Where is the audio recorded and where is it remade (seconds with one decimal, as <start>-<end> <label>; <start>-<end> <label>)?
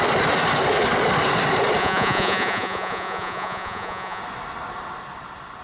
0.0-1.8 recorded; 1.8-4.2 remade; 4.2-5.6 recorded